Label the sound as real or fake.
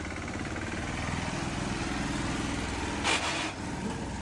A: real